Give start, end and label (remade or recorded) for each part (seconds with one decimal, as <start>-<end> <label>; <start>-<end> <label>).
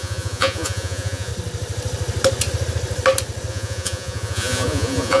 0.0-1.3 remade; 1.3-3.5 recorded; 3.5-5.2 remade